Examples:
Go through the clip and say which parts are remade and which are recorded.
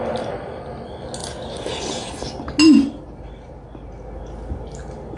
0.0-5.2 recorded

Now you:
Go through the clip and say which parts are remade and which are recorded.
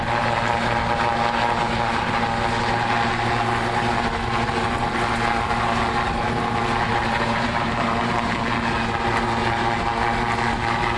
0.0-6.9 recorded; 6.9-8.4 remade; 8.4-11.0 recorded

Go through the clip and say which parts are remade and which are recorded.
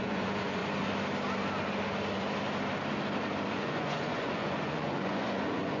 0.0-0.6 remade; 0.6-3.5 recorded; 3.5-5.8 remade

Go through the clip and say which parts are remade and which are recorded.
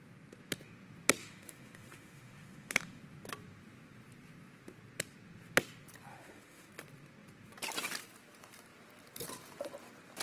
0.0-1.2 recorded; 1.2-3.0 remade; 3.0-6.1 recorded; 6.1-6.7 remade; 6.7-10.2 recorded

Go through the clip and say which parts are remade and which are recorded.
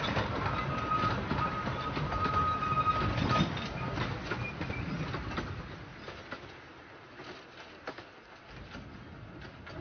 0.0-5.9 recorded; 5.9-6.5 remade; 6.5-9.8 recorded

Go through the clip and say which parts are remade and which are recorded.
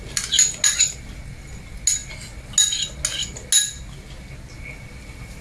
0.0-5.4 recorded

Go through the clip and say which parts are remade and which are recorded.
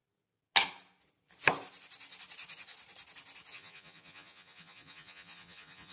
0.0-3.5 recorded; 3.5-5.9 remade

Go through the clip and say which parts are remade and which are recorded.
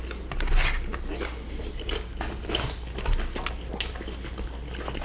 0.0-5.0 recorded